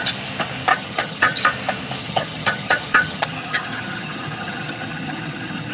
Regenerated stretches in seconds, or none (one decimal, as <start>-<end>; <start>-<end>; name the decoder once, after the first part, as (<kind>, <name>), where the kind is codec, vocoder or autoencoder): 0.7-1.4 (vocoder, HiFi-GAN); 2.0-5.7

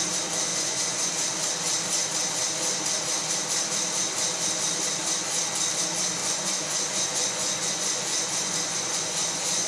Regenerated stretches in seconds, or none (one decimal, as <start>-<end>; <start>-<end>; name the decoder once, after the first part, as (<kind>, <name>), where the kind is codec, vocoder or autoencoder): 0.5-1.1 (vocoder, Vocos); 6.2-9.7

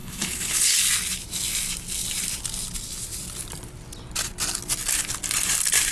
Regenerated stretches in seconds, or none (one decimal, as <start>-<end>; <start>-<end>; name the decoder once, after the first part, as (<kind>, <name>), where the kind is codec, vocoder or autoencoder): 0.0-0.8 (codec, HILCodec)

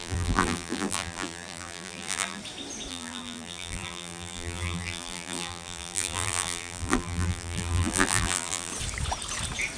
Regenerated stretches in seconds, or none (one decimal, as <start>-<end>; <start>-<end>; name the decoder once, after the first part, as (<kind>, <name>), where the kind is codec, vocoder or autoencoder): 0.0-2.4 (vocoder, BigVGAN v2); 2.9-8.7

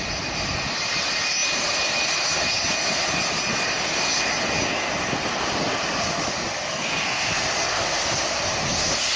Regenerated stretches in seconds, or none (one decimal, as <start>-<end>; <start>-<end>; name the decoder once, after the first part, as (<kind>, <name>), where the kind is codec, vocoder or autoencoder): 6.7-7.3 (codec, SNAC)

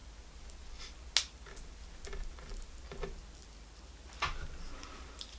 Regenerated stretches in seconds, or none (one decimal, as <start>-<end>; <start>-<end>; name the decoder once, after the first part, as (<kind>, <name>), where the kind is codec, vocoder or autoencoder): none